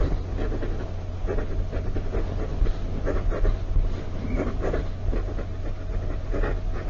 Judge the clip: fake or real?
real